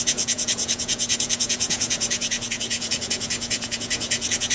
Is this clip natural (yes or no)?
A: no